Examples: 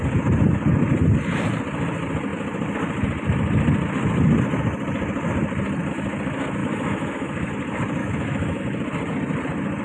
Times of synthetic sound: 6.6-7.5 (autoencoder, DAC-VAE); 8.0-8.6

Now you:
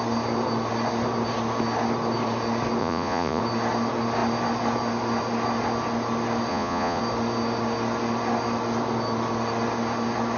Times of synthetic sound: 2.8-3.4 (vocoder, Vocos); 6.5-7.0

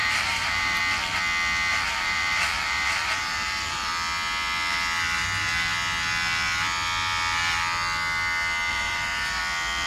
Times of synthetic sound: 0.0-0.8 (vocoder, BigVGAN v2); 1.7-3.9; 8.7-9.4

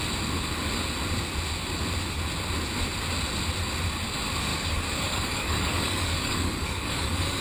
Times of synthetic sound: 4.5-7.4 (codec, DAC)